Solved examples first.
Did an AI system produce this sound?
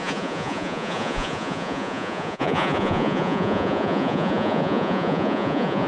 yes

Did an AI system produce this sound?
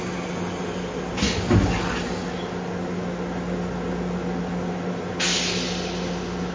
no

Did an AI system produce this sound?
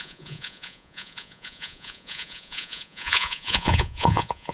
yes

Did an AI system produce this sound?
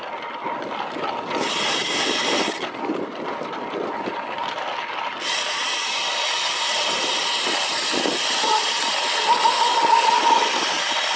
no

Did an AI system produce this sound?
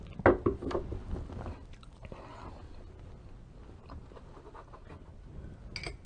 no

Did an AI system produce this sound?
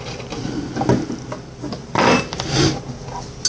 no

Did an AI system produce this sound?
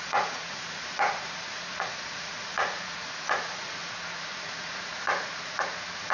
yes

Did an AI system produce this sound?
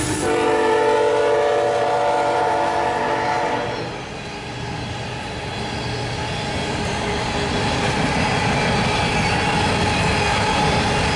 no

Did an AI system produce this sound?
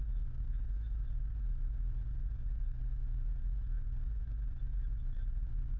yes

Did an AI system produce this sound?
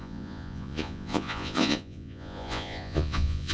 yes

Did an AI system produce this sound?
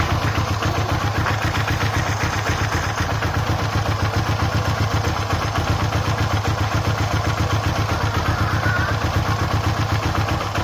no